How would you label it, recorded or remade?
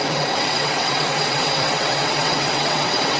remade